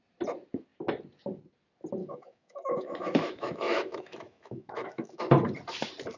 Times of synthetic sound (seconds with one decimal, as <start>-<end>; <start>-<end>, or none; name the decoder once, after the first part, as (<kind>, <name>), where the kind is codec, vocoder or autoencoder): 2.0-5.3 (autoencoder, DAC-VAE)